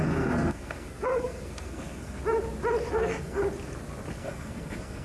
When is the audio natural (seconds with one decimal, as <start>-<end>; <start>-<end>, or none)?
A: 2.2-2.9; 3.4-4.1